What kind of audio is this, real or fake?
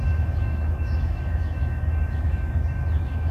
fake